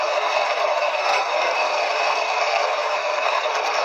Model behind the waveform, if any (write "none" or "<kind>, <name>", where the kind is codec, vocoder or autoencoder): codec, SNAC